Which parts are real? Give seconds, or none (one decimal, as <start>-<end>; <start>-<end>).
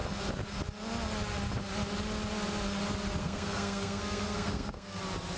0.0-3.2; 5.0-5.4